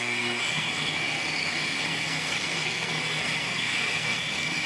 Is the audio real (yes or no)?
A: no